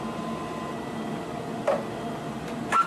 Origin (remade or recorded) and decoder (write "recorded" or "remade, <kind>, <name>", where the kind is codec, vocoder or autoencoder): recorded